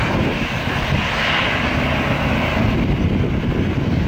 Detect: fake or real real